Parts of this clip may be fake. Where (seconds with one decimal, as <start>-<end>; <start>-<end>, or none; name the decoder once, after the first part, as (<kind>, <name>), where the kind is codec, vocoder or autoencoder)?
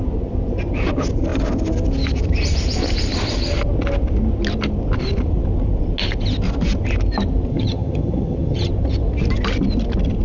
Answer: 7.5-8.7 (vocoder, HiFi-GAN)